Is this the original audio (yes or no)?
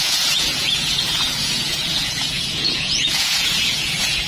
no